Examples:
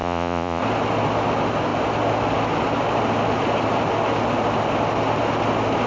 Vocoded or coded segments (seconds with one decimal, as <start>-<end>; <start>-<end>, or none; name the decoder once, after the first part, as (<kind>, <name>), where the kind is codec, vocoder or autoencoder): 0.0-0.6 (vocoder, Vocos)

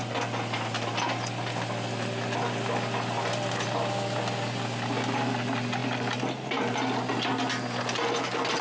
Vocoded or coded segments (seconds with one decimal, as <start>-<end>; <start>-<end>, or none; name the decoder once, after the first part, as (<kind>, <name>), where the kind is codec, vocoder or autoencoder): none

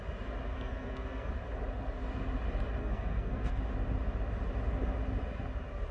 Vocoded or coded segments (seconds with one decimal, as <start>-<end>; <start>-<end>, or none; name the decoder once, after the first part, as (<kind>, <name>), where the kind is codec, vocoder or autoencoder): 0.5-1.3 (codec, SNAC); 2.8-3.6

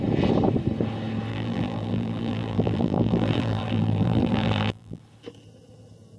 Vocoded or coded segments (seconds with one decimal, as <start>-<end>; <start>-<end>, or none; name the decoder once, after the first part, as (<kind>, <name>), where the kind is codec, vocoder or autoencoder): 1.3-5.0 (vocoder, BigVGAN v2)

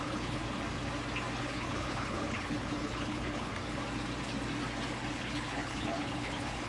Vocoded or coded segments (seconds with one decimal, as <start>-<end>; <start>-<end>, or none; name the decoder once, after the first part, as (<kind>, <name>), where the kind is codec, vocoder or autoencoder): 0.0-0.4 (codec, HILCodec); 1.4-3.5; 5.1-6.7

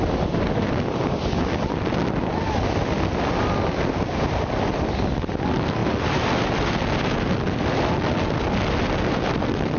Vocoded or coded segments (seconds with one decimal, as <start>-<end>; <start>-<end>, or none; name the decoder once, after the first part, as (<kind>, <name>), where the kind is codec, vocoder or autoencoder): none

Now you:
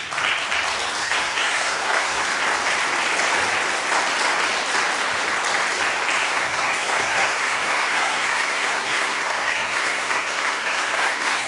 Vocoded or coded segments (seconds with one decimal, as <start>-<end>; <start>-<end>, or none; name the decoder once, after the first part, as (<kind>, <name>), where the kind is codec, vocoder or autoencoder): 1.0-2.2 (codec, SNAC); 6.2-11.5